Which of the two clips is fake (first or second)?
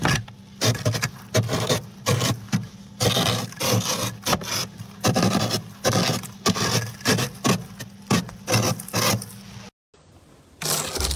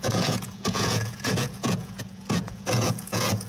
second